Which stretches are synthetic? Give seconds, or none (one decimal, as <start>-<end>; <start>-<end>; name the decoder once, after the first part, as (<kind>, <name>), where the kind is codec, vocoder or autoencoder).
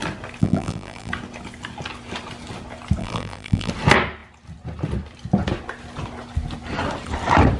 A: 0.4-1.1 (vocoder, BigVGAN v2); 3.0-3.7